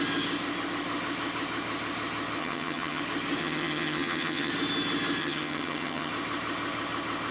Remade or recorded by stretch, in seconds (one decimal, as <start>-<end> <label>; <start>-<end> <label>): 0.0-2.4 recorded; 2.4-3.0 remade; 3.0-3.4 recorded; 3.4-4.5 remade; 4.5-5.2 recorded; 5.2-6.1 remade; 6.1-7.3 recorded